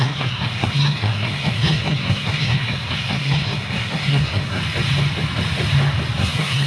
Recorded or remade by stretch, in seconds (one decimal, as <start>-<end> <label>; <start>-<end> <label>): 0.0-4.6 remade; 4.6-6.2 recorded; 6.2-6.7 remade